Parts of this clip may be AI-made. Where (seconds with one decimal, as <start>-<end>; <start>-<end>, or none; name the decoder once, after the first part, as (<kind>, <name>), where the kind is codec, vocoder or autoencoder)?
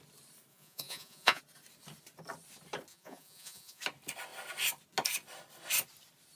0.5-1.4 (vocoder, Vocos); 2.9-3.8